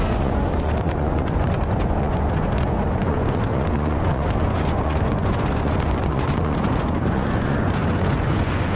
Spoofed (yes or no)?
yes